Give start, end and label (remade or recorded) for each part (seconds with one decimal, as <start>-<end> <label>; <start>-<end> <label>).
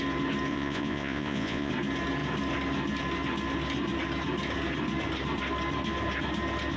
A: 0.0-0.5 recorded; 0.5-1.7 remade; 1.7-6.8 recorded